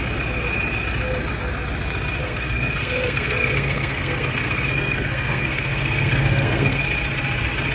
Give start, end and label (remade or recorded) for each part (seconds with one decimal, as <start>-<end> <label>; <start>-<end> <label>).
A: 0.0-2.2 recorded; 2.2-6.8 remade; 6.8-7.7 recorded